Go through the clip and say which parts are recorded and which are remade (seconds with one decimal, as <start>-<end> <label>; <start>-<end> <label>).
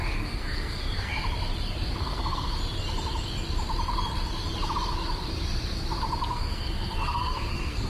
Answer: 0.0-1.1 remade; 1.1-2.0 recorded; 2.0-2.5 remade; 2.5-6.3 recorded; 6.3-7.9 remade